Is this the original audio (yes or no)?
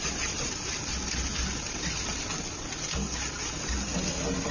yes